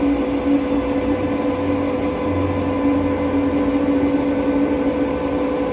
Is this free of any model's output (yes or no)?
yes